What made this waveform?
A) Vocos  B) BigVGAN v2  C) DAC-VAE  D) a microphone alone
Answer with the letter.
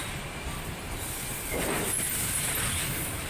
D